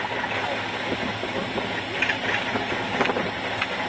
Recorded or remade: recorded